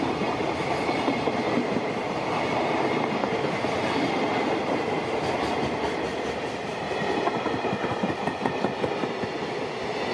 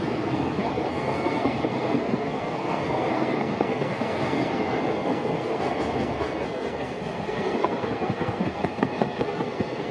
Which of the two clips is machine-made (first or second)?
second